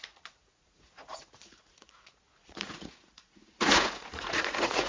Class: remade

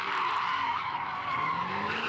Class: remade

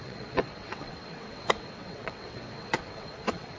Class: remade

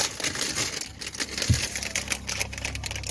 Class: recorded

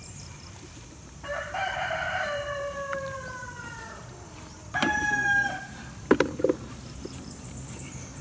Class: remade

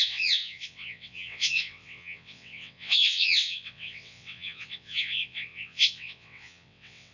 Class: remade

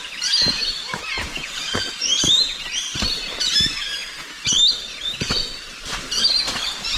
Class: remade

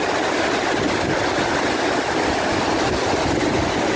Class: recorded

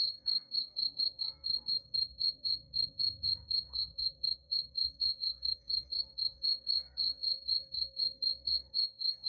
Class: remade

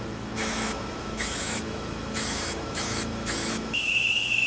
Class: remade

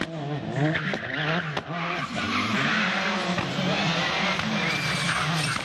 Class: recorded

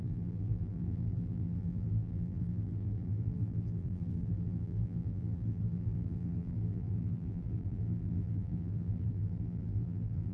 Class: remade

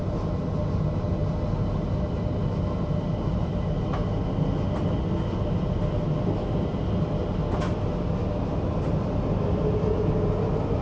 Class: recorded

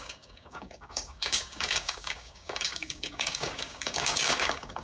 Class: remade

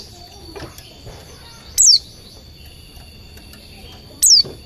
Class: recorded